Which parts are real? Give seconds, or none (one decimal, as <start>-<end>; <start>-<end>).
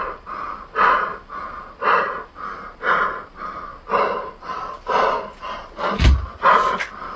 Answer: 0.0-7.2